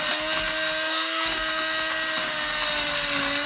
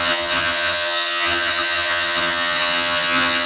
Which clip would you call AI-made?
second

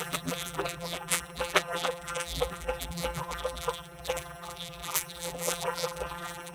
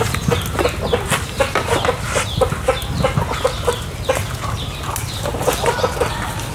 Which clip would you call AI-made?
first